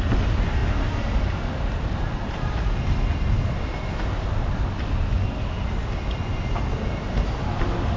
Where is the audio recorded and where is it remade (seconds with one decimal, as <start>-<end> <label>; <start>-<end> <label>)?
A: 0.0-8.0 recorded